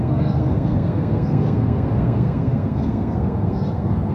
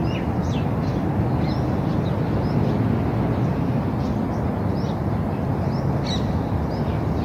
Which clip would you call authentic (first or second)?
second